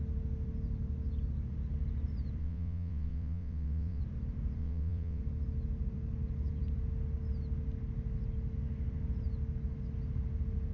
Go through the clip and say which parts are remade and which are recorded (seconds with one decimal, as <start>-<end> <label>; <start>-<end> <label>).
0.0-2.4 recorded; 2.4-4.0 remade; 4.0-4.6 recorded; 4.6-5.2 remade; 5.2-10.7 recorded